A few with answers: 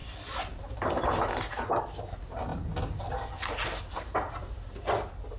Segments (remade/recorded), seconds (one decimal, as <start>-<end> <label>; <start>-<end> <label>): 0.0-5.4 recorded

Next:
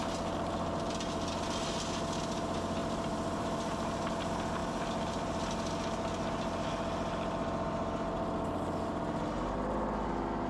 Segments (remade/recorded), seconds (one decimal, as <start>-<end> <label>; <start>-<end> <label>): 0.0-2.8 recorded; 2.8-4.0 remade; 4.0-4.6 recorded; 4.6-5.5 remade; 5.5-10.5 recorded

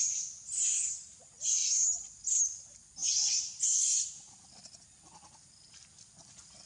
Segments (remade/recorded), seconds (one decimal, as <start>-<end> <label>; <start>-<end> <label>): 0.0-6.7 recorded

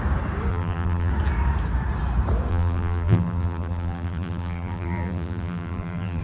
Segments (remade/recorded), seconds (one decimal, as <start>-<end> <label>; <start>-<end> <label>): 0.0-0.5 recorded; 0.5-1.1 remade; 1.1-2.5 recorded; 2.5-6.2 remade

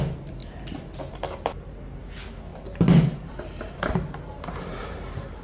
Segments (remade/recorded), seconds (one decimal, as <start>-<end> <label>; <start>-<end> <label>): 0.0-2.5 recorded; 2.5-5.4 remade